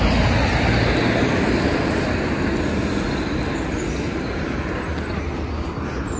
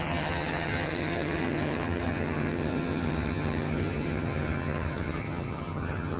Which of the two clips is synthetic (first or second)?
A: second